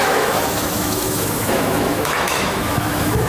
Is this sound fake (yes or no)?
yes